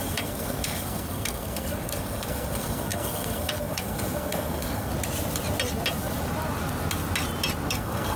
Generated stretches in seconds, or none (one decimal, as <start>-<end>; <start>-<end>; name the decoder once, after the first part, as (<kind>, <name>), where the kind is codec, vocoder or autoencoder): 0.0-4.9 (codec, SNAC); 7.7-8.2